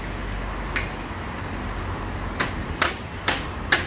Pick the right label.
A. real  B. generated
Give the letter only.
A